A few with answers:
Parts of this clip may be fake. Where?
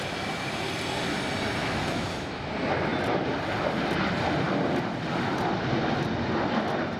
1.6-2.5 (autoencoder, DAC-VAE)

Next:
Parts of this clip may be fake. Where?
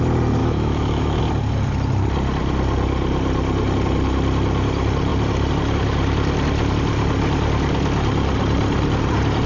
0.4-1.2 (autoencoder, DAC-VAE)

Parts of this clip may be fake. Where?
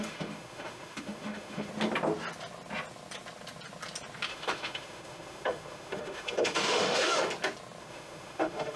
0.0-1.7 (autoencoder, DAC-VAE); 4.3-7.3; 7.8-8.8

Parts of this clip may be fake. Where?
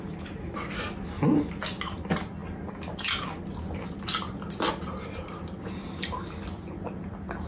none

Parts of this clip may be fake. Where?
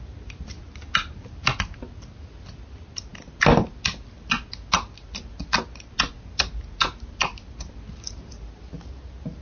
none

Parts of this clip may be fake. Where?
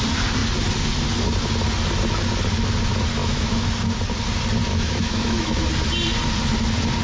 3.2-3.7 (autoencoder, DAC-VAE); 4.7-5.7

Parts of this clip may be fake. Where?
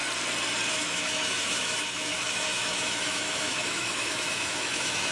0.7-5.1 (autoencoder, DAC-VAE)